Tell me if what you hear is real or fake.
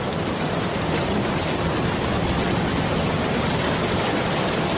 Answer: real